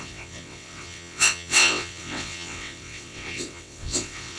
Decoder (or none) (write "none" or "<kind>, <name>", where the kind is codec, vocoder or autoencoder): vocoder, WaveNeXt